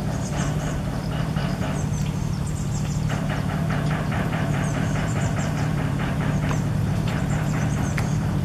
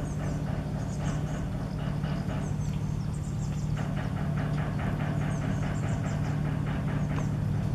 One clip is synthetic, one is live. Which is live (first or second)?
second